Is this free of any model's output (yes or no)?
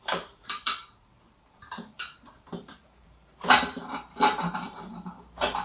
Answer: no